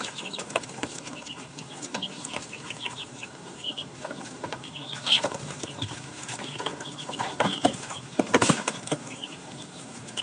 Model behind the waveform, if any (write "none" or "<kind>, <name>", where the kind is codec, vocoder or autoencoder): codec, SNAC